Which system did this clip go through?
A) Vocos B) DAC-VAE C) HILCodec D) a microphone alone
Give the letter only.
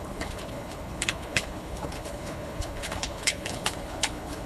C